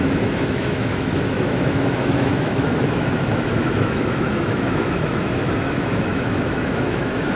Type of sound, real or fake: fake